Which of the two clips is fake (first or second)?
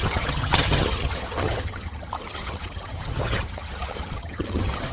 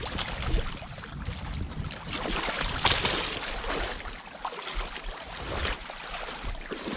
first